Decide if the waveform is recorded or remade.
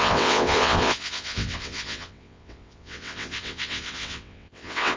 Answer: remade